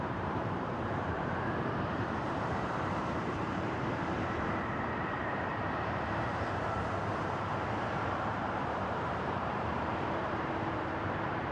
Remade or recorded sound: remade